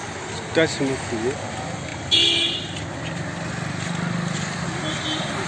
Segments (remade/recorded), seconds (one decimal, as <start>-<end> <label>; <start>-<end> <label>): 0.0-5.5 recorded